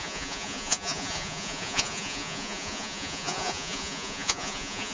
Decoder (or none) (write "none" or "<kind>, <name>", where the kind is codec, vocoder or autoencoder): vocoder, Vocos